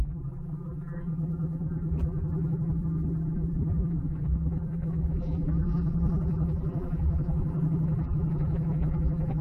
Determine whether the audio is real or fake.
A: fake